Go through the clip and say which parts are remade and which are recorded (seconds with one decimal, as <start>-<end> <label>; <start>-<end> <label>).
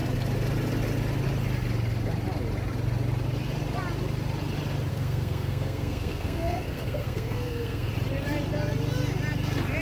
0.0-4.9 recorded; 4.9-7.9 remade; 7.9-9.8 recorded